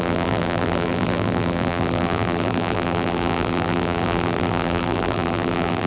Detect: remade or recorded remade